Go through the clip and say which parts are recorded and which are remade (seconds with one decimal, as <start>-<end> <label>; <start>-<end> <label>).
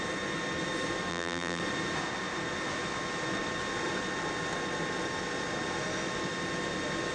0.0-1.1 recorded; 1.1-1.6 remade; 1.6-7.1 recorded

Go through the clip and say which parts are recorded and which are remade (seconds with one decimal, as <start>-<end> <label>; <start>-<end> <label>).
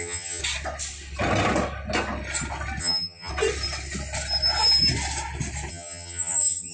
0.0-0.4 remade; 0.4-2.8 recorded; 2.8-3.3 remade; 3.3-5.7 recorded; 5.7-6.7 remade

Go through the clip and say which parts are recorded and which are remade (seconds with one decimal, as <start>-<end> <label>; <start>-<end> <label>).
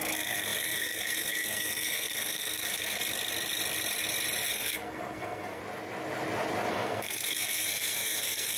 0.0-3.0 remade; 3.0-4.5 recorded; 4.5-5.6 remade; 5.6-6.7 recorded; 6.7-8.6 remade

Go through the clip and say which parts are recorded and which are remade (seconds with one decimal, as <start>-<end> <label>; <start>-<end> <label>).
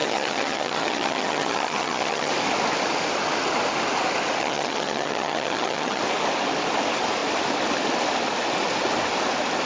0.0-2.3 remade; 2.3-4.4 recorded; 4.4-6.0 remade; 6.0-9.7 recorded